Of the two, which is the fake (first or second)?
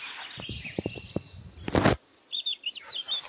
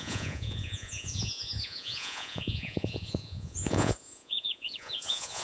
second